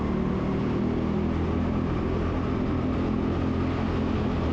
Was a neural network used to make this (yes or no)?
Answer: no